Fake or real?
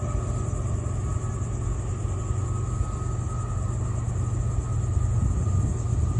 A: real